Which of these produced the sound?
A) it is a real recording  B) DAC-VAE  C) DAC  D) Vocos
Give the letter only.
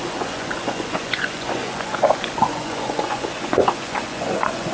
D